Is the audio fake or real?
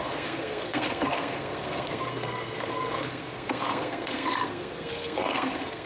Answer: fake